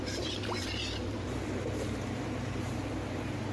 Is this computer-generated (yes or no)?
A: yes